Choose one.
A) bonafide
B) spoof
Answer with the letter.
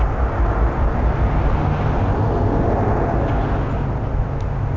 A